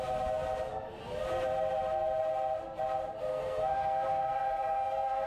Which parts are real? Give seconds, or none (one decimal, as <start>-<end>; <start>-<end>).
0.0-3.3

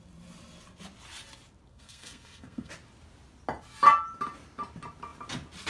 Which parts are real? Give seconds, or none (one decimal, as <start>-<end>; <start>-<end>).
0.0-1.7; 2.7-5.7

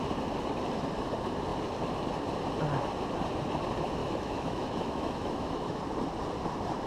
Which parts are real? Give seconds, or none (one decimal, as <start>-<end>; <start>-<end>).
0.0-4.0; 5.8-6.9

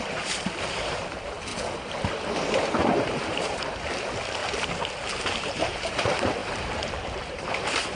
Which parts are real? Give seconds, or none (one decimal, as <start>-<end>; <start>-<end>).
1.5-2.6; 4.4-5.2

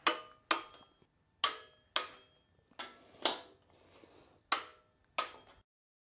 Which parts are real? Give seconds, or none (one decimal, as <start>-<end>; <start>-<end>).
0.0-6.1

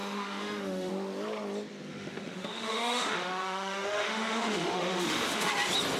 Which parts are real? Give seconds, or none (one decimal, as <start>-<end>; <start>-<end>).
0.9-1.9; 5.5-6.0